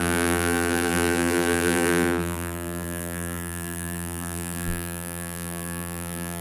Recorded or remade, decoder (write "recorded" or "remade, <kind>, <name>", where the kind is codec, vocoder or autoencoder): remade, vocoder, BigVGAN v2